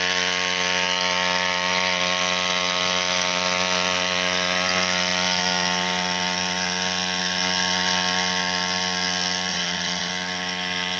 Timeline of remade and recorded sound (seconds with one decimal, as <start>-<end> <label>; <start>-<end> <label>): 0.0-9.5 recorded; 9.5-10.1 remade; 10.1-11.0 recorded